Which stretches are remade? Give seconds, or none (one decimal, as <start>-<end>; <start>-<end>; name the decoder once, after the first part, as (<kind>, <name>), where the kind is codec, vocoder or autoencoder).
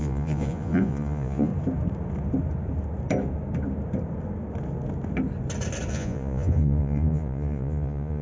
0.0-1.5 (vocoder, Vocos); 5.9-8.2